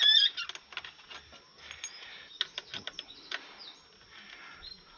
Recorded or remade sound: recorded